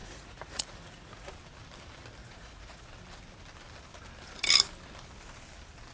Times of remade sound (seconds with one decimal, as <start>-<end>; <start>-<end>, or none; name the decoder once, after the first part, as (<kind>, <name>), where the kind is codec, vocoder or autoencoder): 0.0-1.3 (vocoder, Vocos); 2.2-2.8

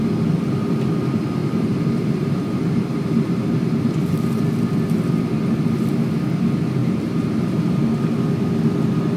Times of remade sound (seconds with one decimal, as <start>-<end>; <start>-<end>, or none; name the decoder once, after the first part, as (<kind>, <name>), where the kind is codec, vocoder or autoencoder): 1.4-4.4 (vocoder, BigVGAN v2); 6.8-7.3

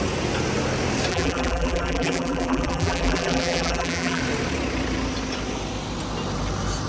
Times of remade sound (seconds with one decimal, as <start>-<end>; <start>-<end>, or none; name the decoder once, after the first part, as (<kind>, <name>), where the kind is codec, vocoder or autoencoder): 1.1-4.2 (vocoder, BigVGAN v2)

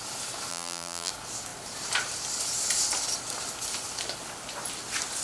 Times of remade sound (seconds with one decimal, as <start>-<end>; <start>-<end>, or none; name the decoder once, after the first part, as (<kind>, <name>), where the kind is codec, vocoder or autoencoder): 0.5-1.1 (vocoder, BigVGAN v2)